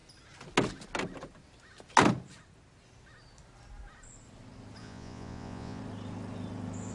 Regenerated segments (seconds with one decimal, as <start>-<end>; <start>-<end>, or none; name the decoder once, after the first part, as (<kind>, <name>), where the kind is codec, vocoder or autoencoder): 4.8-5.8 (vocoder, Vocos)